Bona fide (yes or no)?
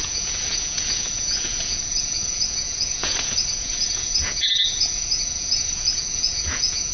no